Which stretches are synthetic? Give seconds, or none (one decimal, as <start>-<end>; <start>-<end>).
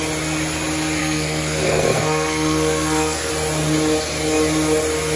1.0-3.3